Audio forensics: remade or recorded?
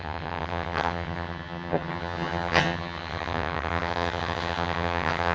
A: remade